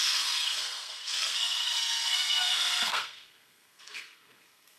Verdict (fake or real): fake